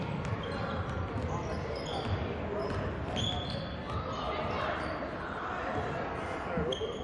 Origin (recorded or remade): recorded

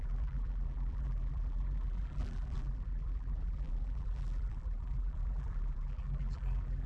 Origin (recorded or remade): remade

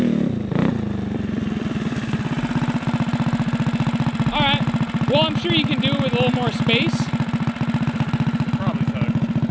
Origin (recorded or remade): recorded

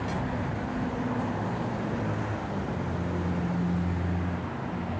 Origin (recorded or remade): recorded